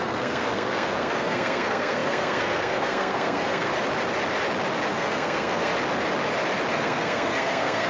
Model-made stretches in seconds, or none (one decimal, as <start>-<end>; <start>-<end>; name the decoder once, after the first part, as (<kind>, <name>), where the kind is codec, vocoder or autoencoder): 0.0-3.7 (codec, SNAC); 4.9-5.7; 6.7-7.9